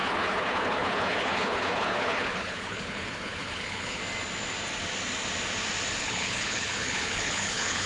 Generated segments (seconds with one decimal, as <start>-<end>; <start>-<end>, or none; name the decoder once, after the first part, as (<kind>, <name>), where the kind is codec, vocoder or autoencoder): 0.0-4.0 (codec, HILCodec); 6.0-7.9